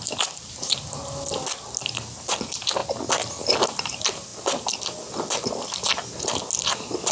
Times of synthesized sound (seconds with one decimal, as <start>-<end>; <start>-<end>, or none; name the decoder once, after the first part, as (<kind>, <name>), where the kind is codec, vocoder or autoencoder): none